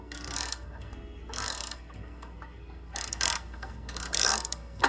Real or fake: fake